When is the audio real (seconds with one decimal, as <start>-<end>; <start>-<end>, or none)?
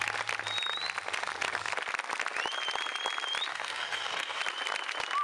0.0-3.5; 4.4-5.2